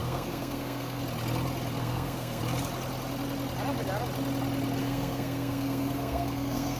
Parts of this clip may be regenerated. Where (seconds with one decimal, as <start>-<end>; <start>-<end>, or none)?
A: 0.0-1.0; 1.8-2.4; 4.8-6.8

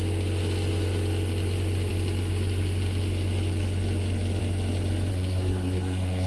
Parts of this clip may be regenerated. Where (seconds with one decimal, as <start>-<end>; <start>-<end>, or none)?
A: 5.1-6.3

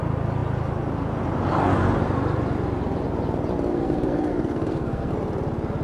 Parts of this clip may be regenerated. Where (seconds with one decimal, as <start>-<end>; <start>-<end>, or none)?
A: 3.7-5.1

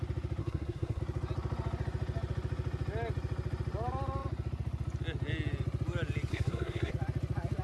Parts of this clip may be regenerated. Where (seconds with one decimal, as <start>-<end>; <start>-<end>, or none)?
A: 0.4-1.0; 6.3-6.9

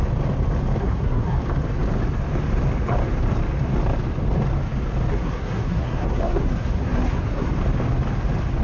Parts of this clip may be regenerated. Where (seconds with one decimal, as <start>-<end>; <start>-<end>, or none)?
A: 0.8-1.4; 5.1-7.5

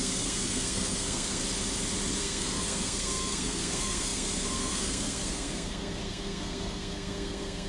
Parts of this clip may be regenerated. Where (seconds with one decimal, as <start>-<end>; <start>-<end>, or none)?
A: 0.0-1.4; 2.2-7.7